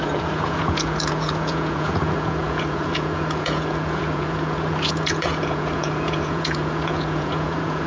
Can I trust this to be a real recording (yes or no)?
no